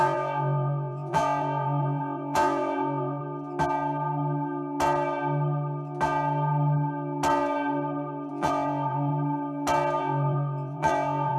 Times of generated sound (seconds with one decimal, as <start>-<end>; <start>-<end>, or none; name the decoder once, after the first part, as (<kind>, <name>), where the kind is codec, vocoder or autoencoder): 0.0-3.2 (vocoder, Vocos); 8.3-9.1; 10.0-11.4